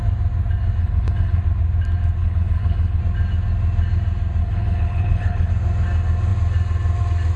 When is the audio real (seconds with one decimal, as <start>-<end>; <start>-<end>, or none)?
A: 0.0-0.8; 1.4-2.2; 3.0-4.4; 5.5-7.4